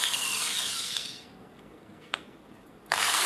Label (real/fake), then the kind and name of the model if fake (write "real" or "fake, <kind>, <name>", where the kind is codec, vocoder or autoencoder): fake, codec, SNAC